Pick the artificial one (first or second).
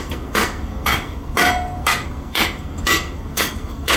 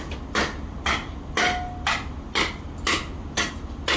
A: first